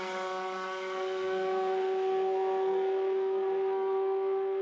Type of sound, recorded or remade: remade